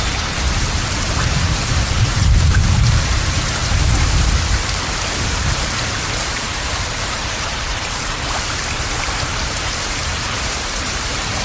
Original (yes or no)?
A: no